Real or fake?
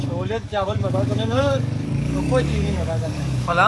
fake